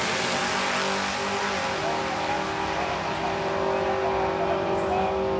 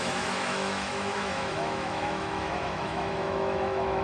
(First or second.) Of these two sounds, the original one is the first